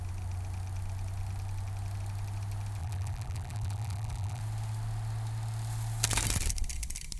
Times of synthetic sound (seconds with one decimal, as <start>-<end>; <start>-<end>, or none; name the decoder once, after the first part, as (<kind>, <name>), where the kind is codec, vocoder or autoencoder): 2.8-4.4 (vocoder, BigVGAN v2)